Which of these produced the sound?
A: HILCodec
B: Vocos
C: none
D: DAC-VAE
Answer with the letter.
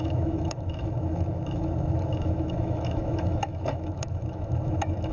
D